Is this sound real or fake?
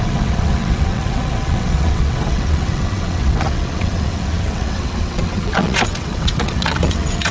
fake